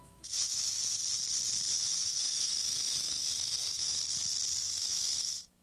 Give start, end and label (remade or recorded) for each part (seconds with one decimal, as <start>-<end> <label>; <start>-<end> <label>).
0.0-1.0 remade; 1.0-1.7 recorded; 1.7-4.0 remade; 4.0-4.6 recorded; 4.6-5.6 remade